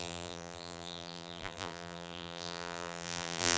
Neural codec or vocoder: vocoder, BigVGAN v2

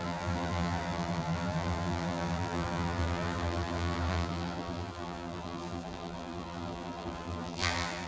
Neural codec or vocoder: vocoder, BigVGAN v2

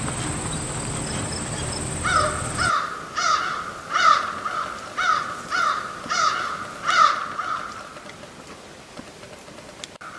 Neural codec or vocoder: none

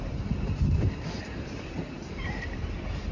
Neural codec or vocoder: vocoder, BigVGAN v2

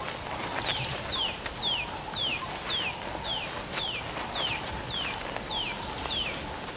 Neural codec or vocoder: none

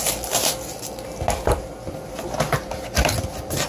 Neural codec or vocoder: none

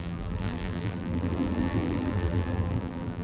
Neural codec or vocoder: vocoder, BigVGAN v2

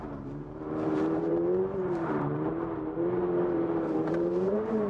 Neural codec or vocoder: vocoder, BigVGAN v2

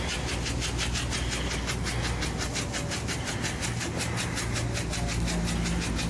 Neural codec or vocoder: none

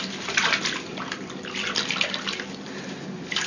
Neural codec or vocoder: none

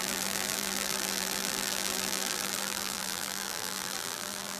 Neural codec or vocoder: vocoder, BigVGAN v2